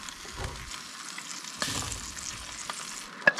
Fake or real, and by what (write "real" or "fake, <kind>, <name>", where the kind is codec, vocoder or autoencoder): real